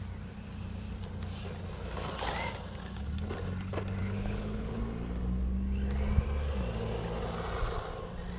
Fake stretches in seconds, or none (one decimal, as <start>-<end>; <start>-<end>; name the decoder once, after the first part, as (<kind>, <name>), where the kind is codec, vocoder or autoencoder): 4.0-4.8 (codec, HILCodec)